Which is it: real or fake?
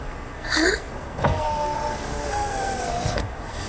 fake